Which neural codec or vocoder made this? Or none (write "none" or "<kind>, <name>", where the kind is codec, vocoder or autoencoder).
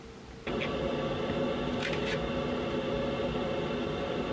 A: none